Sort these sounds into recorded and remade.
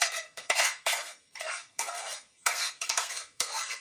remade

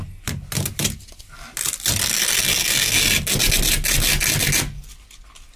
recorded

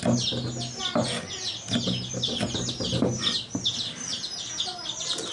recorded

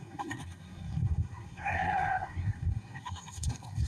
remade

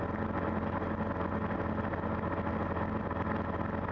recorded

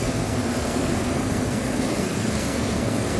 remade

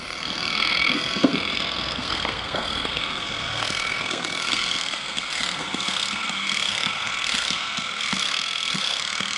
remade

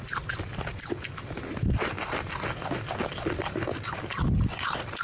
recorded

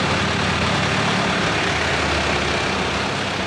recorded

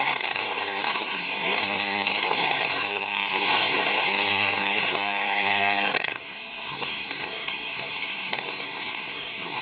remade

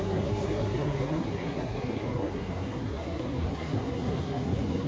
remade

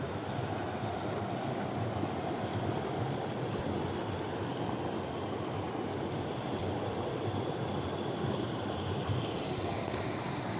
recorded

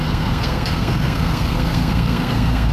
remade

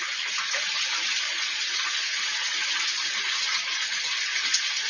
recorded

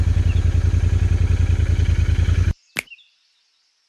recorded